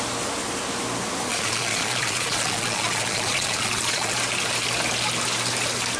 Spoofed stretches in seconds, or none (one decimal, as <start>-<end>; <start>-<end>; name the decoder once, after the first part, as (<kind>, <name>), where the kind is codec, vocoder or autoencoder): 1.3-4.1 (vocoder, Vocos)